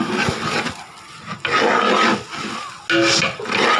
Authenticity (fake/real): real